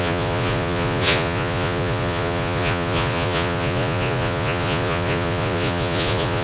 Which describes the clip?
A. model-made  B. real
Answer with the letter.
A